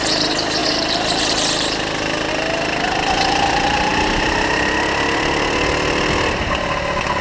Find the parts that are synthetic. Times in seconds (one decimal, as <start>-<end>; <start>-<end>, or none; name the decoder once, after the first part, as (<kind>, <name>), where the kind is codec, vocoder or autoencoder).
none